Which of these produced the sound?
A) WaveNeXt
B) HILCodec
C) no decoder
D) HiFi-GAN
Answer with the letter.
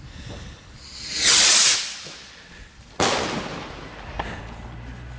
C